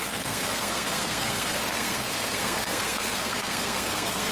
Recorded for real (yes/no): no